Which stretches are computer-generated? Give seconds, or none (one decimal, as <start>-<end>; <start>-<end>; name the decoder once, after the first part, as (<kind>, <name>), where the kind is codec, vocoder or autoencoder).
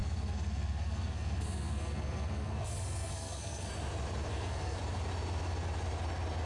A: 0.0-3.7 (codec, SNAC); 4.3-4.8